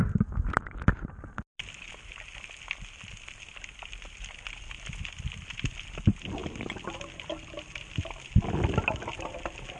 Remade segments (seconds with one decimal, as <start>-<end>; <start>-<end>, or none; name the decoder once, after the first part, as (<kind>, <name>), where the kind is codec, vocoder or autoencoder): none

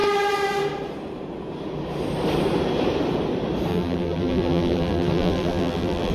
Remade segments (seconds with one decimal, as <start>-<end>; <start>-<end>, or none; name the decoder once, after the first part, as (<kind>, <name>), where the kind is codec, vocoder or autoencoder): 3.7-6.1 (vocoder, BigVGAN v2)

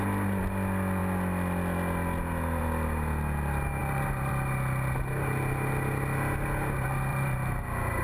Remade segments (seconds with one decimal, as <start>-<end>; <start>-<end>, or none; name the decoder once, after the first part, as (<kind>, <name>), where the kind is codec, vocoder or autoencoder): 3.8-4.3 (vocoder, BigVGAN v2); 7.1-7.6

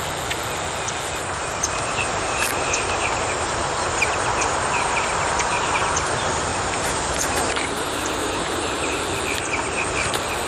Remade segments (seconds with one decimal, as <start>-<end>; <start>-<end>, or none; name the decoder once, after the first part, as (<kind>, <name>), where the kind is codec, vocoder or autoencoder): 1.4-5.8 (vocoder, BigVGAN v2); 6.5-9.0

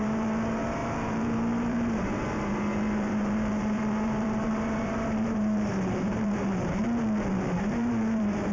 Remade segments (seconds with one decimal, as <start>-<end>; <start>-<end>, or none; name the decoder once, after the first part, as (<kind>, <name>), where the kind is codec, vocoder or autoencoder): 0.0-6.8 (vocoder, BigVGAN v2); 7.3-8.5